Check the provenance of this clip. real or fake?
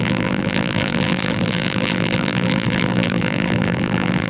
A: fake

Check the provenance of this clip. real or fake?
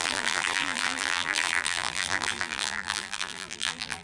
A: fake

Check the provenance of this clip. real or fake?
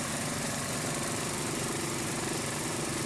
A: fake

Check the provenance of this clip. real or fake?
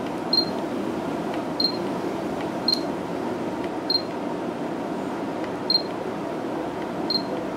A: real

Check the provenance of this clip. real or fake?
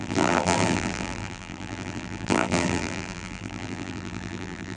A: fake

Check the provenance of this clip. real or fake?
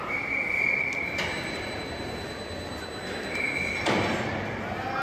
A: real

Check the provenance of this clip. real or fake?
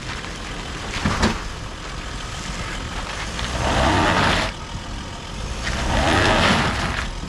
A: real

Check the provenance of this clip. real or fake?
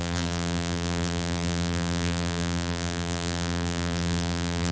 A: fake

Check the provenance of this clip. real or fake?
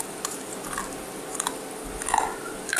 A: real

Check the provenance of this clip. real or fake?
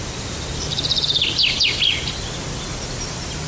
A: real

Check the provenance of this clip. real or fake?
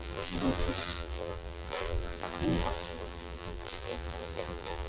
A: fake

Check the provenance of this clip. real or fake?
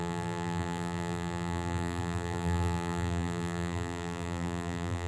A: fake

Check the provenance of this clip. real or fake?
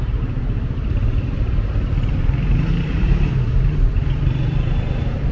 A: fake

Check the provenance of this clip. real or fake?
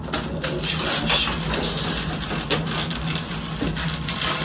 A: real